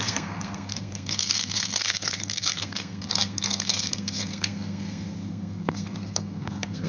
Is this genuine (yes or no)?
no